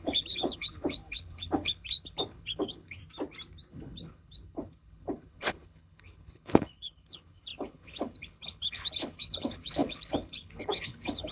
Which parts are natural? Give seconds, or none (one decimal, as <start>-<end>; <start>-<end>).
3.0-3.7